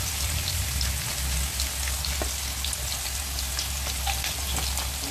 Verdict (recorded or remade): recorded